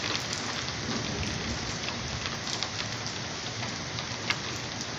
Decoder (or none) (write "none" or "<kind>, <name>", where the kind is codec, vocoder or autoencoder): none